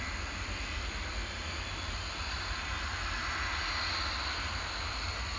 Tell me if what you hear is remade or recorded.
recorded